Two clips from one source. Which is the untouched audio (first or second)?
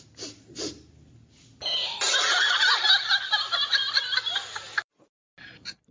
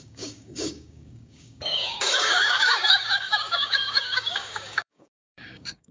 first